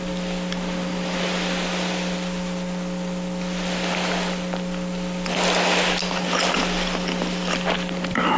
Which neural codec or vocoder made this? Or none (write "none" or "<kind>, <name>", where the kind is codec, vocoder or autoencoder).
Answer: none